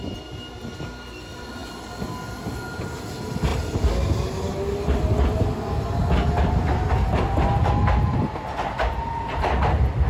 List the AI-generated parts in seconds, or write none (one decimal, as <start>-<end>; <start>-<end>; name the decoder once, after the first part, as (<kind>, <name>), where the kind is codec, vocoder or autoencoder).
none